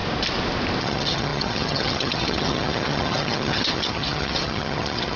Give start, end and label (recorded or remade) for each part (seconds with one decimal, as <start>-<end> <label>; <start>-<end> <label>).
0.0-0.8 recorded; 0.8-5.2 remade